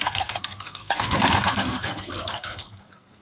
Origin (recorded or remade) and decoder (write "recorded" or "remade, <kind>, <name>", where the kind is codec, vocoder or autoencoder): remade, codec, SNAC